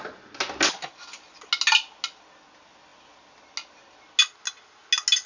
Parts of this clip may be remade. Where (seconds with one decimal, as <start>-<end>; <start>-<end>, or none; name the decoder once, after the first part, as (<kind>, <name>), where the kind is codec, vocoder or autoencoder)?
none